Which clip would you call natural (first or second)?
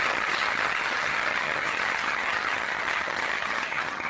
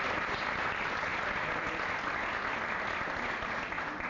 second